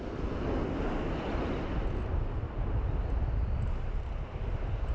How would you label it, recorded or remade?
recorded